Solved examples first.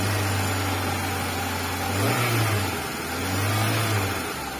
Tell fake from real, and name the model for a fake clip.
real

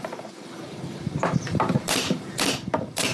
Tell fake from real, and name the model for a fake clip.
fake, vocoder, BigVGAN v2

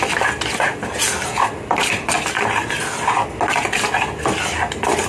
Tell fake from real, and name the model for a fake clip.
real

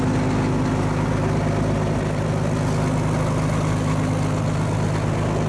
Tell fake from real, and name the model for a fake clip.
real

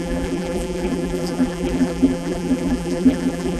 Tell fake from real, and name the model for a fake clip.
fake, vocoder, BigVGAN v2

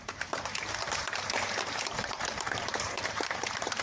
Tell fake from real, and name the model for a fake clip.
fake, vocoder, BigVGAN v2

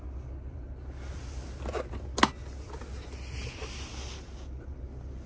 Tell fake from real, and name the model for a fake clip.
real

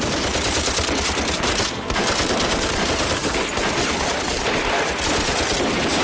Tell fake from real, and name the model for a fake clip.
real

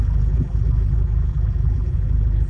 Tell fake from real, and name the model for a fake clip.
fake, vocoder, BigVGAN v2